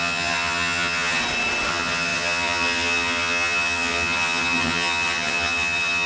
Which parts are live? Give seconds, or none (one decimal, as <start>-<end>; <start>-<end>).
1.2-1.7